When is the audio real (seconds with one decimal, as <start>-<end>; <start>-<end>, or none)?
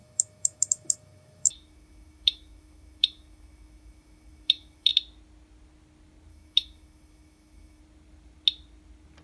4.9-6.3; 7.8-9.2